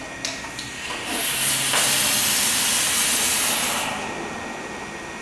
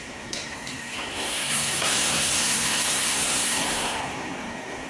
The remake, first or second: second